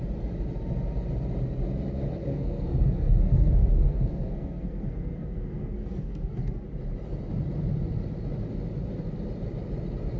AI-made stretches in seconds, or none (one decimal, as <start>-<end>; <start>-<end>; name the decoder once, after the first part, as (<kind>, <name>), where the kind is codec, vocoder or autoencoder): 2.2-6.6 (codec, SNAC)